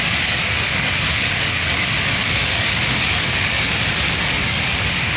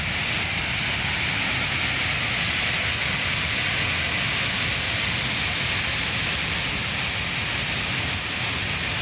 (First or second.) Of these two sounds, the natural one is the second